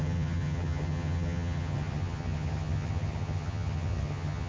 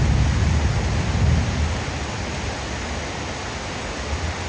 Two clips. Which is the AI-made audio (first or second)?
first